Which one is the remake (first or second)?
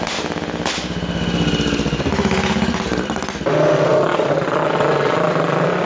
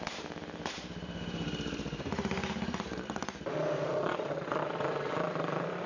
second